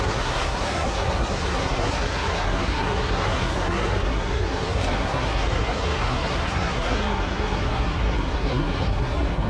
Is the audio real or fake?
fake